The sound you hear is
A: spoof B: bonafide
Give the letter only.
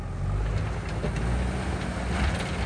B